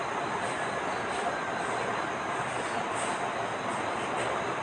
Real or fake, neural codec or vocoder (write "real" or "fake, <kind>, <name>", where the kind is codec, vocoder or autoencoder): real